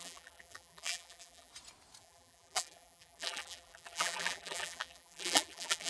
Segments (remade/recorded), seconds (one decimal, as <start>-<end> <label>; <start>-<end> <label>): 0.0-1.5 remade; 1.5-2.0 recorded; 2.0-5.9 remade